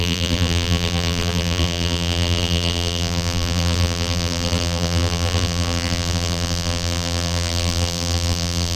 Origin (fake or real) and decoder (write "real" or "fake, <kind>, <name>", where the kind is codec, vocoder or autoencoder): fake, vocoder, BigVGAN v2